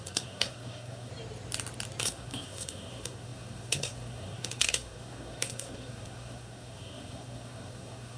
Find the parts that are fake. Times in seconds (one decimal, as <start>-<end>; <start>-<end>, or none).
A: 0.0-1.1; 2.0-8.2